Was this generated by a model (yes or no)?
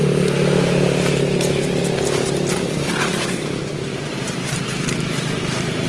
yes